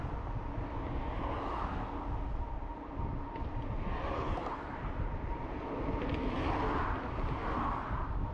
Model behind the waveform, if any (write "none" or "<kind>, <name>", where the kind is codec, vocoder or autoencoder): none